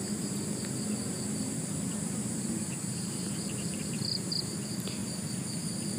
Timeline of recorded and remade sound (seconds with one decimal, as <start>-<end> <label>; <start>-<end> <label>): 0.0-5.0 remade; 5.0-5.6 recorded; 5.6-6.0 remade